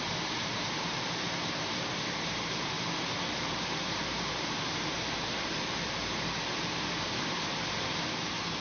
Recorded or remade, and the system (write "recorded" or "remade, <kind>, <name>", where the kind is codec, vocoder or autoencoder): remade, vocoder, BigVGAN v2